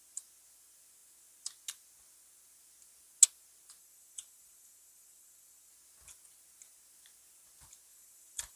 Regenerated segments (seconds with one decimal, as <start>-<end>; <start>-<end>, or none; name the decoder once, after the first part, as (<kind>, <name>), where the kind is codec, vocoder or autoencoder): 3.8-5.7 (vocoder, BigVGAN v2); 7.9-8.6